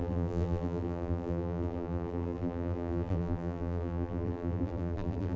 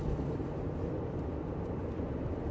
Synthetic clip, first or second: first